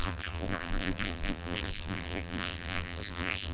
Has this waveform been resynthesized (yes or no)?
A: yes